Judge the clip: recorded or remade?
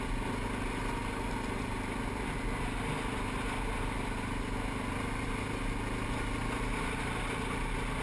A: recorded